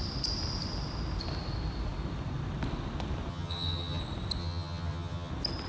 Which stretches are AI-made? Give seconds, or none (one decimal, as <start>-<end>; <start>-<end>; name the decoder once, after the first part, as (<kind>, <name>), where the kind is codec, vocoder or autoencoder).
3.3-4.0 (vocoder, HiFi-GAN); 4.4-5.3